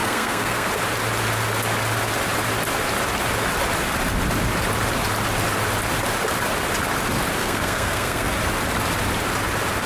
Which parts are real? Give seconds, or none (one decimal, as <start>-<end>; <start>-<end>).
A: 0.7-7.4; 8.3-9.9